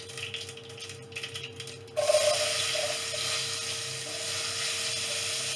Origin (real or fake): real